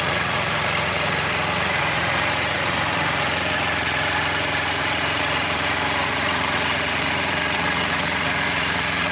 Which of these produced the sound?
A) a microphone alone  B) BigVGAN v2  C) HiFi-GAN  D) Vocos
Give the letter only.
D